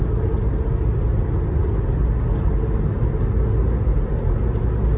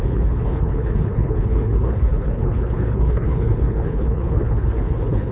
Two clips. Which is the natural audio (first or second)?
first